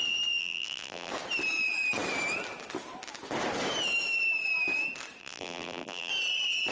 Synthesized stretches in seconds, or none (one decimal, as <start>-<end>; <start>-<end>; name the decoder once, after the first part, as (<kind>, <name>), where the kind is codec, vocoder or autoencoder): 0.4-1.1 (vocoder, BigVGAN v2); 5.2-6.1